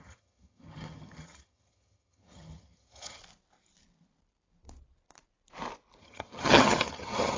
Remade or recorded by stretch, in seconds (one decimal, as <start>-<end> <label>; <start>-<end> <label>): 0.0-3.2 remade; 3.2-6.0 recorded; 6.0-7.4 remade